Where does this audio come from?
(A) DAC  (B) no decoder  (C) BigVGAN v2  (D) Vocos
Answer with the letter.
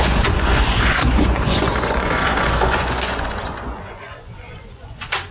D